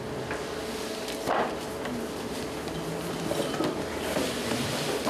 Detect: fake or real real